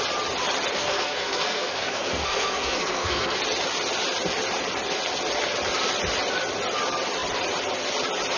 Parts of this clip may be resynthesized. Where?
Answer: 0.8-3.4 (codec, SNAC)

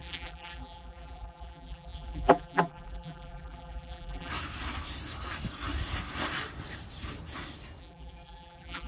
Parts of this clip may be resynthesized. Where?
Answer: 0.0-4.3 (vocoder, BigVGAN v2); 7.8-8.9

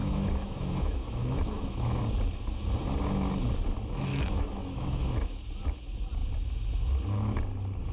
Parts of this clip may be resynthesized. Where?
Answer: 0.0-2.0 (autoencoder, DAC-VAE); 4.1-5.4

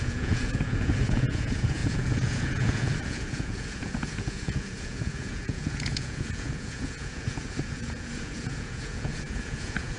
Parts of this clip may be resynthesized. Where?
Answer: 0.0-10.0 (vocoder, Vocos)

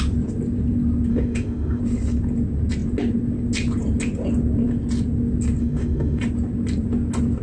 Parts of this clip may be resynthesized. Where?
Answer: 1.1-1.8 (autoencoder, DAC-VAE); 5.6-6.2